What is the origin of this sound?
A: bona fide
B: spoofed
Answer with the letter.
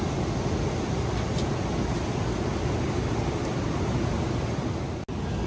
A